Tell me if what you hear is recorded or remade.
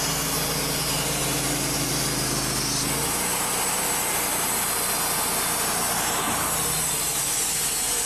recorded